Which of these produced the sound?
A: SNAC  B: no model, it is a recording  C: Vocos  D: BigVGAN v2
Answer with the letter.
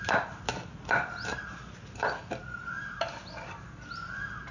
B